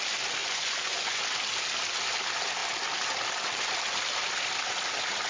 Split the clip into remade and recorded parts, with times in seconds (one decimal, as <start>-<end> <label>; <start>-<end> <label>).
0.0-0.4 recorded; 0.4-1.2 remade; 1.2-5.3 recorded